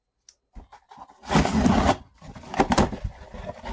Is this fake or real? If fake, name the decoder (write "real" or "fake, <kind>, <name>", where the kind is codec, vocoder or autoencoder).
real